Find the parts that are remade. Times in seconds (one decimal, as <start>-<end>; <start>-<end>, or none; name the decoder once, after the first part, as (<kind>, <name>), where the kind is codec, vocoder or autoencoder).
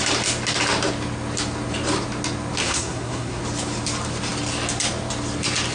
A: 2.6-3.4 (codec, SNAC)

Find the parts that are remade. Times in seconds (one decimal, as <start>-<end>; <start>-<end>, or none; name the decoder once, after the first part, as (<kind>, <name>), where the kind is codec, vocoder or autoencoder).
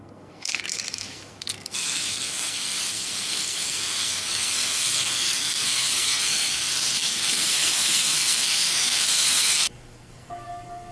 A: 0.0-10.9 (codec, SNAC)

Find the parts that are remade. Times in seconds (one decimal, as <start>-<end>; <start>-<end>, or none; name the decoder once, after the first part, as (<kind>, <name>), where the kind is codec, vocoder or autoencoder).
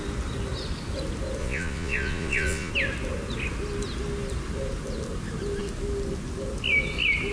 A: 1.4-2.7 (vocoder, Vocos)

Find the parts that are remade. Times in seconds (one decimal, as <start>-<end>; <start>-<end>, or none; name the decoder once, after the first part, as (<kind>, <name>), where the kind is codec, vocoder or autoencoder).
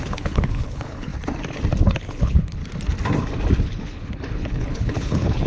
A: 0.0-1.1 (codec, HILCodec); 2.0-2.6; 3.6-5.5